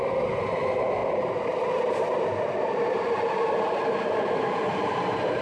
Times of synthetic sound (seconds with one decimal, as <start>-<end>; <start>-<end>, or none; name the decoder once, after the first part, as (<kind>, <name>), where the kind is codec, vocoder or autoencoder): none